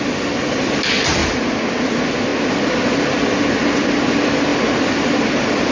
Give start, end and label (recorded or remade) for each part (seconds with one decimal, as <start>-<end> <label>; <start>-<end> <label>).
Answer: 0.0-1.2 remade; 1.2-1.8 recorded; 1.8-2.3 remade; 2.3-4.1 recorded; 4.1-5.7 remade